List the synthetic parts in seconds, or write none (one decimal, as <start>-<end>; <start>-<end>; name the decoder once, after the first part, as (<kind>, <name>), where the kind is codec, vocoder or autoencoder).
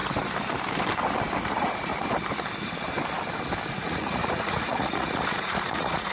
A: 1.5-1.9 (vocoder, Vocos); 3.7-6.1